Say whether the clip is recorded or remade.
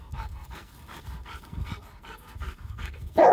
remade